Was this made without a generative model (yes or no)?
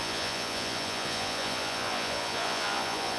no